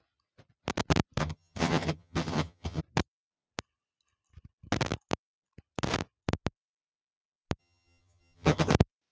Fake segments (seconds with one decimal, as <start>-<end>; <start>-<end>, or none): 1.2-2.8; 7.6-8.7